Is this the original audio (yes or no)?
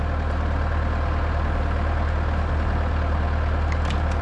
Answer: yes